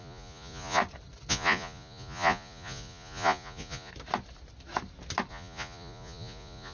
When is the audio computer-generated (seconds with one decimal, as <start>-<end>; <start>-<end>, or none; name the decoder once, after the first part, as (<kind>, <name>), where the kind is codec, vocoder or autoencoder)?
0.0-0.8 (vocoder, Vocos); 1.3-3.9; 5.3-6.7